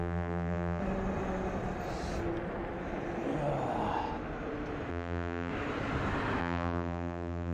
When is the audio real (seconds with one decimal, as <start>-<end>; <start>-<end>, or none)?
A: 0.8-4.9; 5.5-6.4